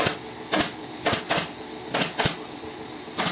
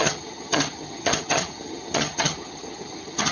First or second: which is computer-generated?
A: second